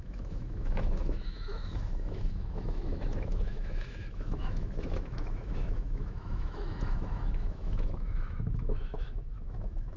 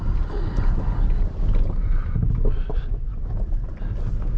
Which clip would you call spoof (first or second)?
first